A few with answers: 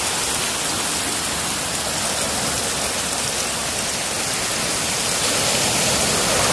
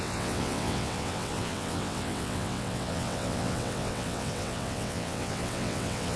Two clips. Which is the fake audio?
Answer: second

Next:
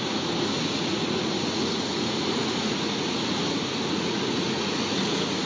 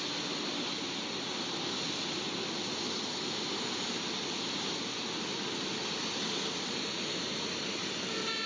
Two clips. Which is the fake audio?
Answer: first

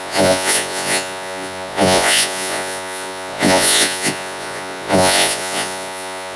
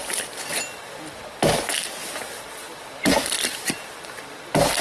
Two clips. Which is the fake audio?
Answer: first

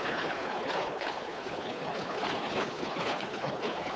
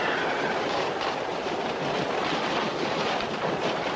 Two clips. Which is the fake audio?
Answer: first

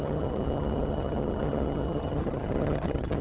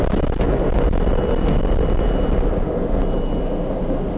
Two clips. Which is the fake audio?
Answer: first